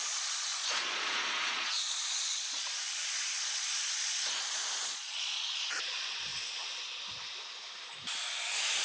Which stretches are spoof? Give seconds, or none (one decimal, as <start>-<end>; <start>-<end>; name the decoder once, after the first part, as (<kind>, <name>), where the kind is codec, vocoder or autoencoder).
0.0-6.3 (vocoder, Vocos)